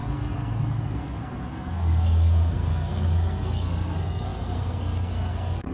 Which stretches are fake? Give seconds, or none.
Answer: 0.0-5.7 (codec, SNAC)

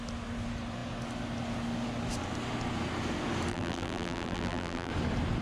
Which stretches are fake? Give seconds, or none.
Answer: 3.5-4.9 (vocoder, BigVGAN v2)